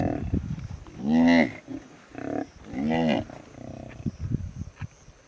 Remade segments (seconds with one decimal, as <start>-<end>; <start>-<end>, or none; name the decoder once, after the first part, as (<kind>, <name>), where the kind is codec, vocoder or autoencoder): none

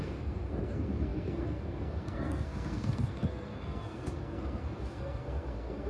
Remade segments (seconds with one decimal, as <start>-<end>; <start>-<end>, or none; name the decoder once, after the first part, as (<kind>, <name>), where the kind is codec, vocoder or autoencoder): 0.0-5.9 (codec, SNAC)